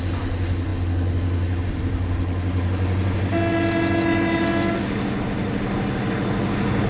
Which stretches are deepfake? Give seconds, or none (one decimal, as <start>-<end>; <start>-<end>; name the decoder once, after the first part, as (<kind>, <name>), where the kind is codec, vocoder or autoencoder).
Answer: none